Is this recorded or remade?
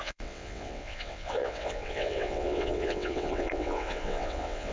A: remade